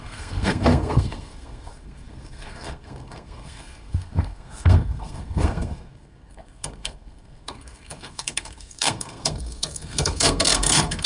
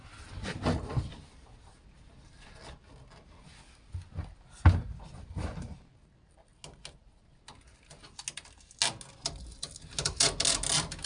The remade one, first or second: first